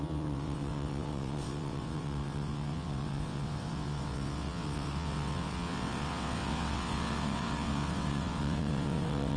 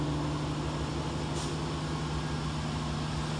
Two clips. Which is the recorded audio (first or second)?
second